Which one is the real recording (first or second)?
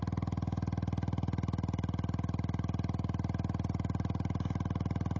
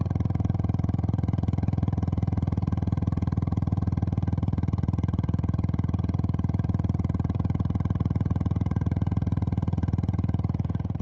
first